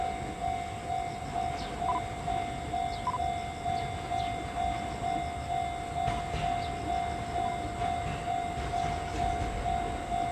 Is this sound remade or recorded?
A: recorded